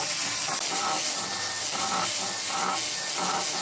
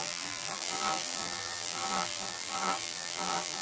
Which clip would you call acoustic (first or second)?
first